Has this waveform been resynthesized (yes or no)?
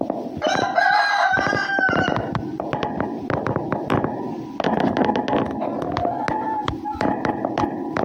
no